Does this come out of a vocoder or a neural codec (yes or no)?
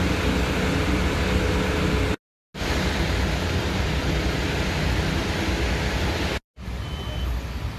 no